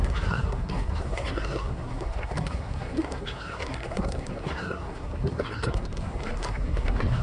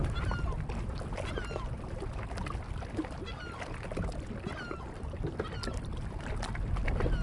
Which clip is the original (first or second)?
second